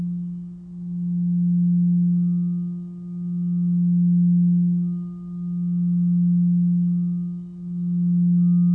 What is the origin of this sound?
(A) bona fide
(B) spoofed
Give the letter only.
A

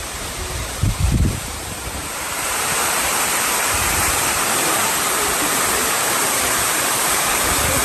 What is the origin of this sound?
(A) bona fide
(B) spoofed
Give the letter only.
B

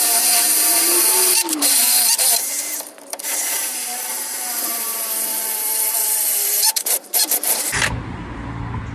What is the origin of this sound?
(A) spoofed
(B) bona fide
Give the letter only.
A